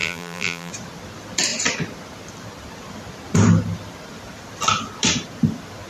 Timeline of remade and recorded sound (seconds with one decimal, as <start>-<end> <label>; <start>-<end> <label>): 0.0-0.7 remade; 0.7-5.9 recorded